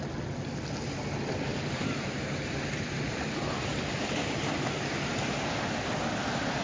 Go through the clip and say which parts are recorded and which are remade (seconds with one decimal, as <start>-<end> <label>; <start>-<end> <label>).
0.0-1.5 recorded; 1.5-4.4 remade; 4.4-6.6 recorded